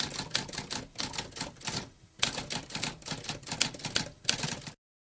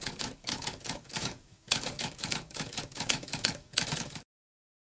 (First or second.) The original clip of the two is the first